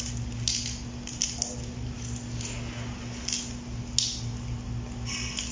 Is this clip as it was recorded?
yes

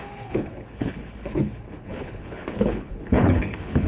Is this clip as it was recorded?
no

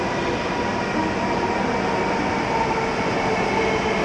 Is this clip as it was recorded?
yes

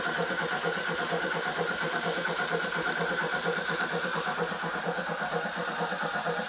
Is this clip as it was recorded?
no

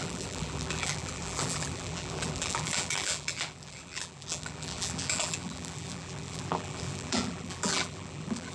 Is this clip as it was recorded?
no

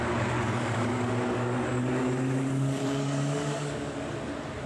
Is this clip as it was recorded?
no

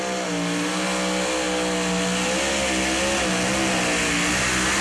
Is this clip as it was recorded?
yes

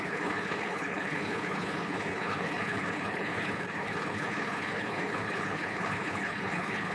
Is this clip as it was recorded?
no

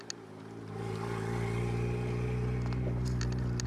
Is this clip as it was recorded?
yes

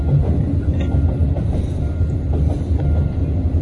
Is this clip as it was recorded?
yes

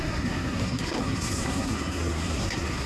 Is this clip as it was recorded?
no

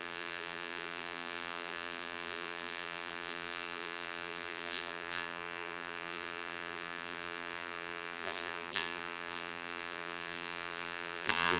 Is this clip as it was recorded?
no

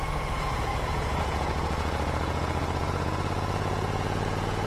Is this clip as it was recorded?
no